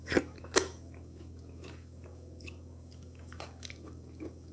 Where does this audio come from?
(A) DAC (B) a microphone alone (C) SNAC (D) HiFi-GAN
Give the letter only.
A